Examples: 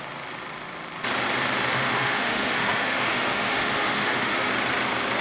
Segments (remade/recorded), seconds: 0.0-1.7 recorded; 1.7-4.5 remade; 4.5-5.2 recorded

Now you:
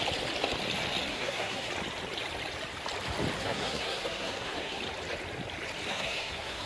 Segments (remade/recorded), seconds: 0.0-1.1 recorded; 1.1-1.7 remade; 1.7-3.4 recorded; 3.4-4.8 remade; 4.8-5.9 recorded; 5.9-6.7 remade